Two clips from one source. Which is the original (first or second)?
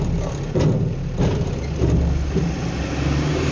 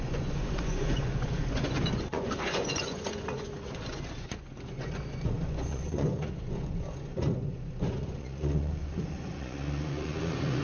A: first